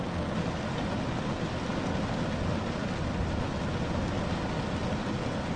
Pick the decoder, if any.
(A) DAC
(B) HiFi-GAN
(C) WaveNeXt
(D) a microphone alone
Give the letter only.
D